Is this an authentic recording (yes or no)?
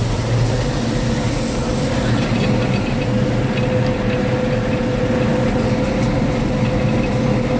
yes